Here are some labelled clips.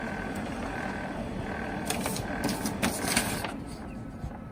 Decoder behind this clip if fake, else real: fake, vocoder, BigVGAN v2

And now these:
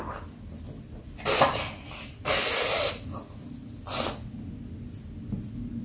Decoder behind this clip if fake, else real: real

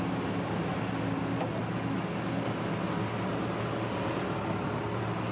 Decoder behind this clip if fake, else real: real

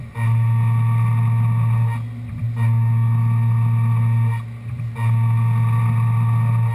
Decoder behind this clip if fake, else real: real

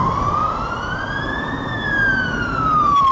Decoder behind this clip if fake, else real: fake, vocoder, BigVGAN v2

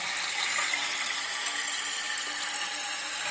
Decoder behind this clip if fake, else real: real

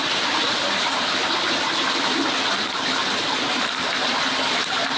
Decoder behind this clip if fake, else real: fake, vocoder, BigVGAN v2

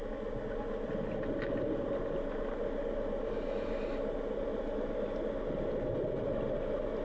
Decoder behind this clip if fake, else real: real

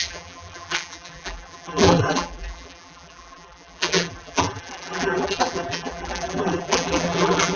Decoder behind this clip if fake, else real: fake, vocoder, BigVGAN v2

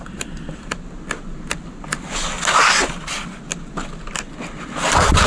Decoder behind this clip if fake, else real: real